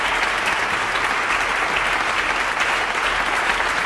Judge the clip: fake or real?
real